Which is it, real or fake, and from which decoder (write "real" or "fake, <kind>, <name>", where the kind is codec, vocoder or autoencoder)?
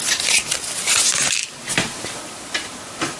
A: real